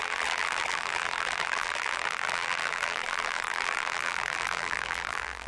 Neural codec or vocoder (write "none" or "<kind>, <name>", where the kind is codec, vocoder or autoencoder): vocoder, BigVGAN v2